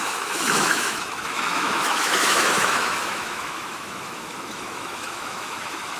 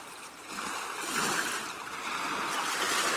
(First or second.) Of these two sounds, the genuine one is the second